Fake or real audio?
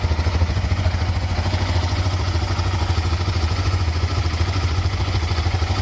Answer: fake